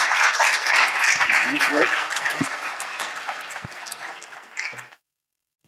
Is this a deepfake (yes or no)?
yes